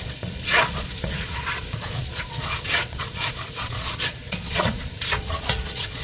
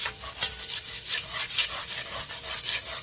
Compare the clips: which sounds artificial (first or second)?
first